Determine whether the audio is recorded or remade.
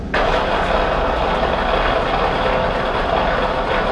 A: recorded